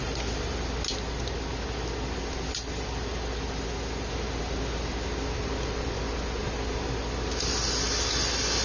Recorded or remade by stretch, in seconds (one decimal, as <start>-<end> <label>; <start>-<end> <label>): 0.0-8.6 recorded